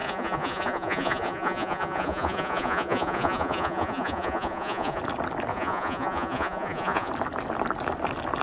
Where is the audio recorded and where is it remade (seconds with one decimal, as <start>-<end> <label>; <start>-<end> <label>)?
0.0-5.0 remade; 5.0-5.5 recorded; 5.5-7.1 remade; 7.1-8.4 recorded